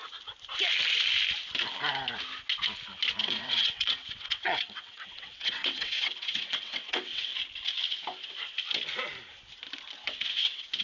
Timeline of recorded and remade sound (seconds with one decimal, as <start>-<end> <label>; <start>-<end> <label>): 0.0-3.2 recorded; 3.2-7.3 remade; 7.3-10.3 recorded; 10.3-10.8 remade